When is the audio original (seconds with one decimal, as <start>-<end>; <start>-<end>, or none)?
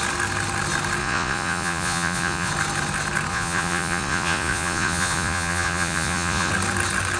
0.0-1.0; 2.5-3.3; 6.5-7.2